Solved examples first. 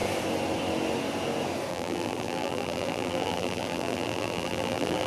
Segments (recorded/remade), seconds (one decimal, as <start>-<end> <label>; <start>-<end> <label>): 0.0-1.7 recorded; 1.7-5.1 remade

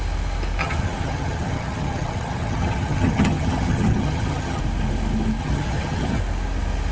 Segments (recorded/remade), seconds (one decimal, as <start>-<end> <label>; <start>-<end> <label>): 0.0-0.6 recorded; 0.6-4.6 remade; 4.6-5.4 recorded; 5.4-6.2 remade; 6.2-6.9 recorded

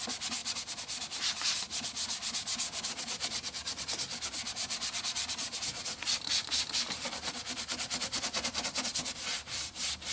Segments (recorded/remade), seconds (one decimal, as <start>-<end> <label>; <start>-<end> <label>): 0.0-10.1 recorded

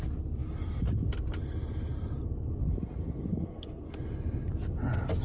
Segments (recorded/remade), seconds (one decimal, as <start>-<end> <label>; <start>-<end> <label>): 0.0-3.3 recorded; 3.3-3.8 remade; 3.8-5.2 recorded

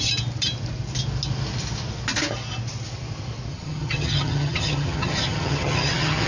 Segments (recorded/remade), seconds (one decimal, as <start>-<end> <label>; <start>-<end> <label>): 0.0-3.5 recorded; 3.5-6.3 remade

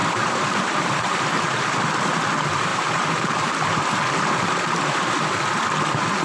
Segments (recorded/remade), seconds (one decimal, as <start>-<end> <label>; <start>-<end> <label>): 0.0-1.2 remade; 1.2-2.7 recorded; 2.7-3.5 remade; 3.5-6.2 recorded

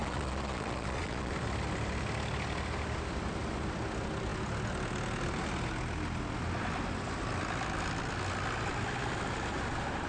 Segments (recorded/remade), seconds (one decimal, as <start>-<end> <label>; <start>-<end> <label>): 0.0-1.3 remade; 1.3-10.1 recorded

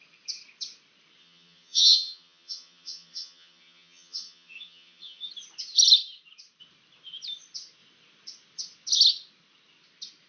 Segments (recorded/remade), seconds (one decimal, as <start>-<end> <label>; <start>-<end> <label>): 0.0-1.2 recorded; 1.2-5.3 remade; 5.3-10.3 recorded